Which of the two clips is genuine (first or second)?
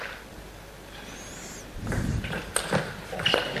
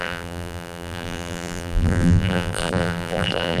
first